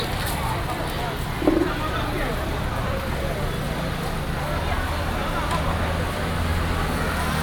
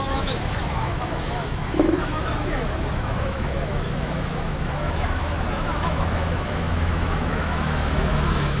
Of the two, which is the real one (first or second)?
first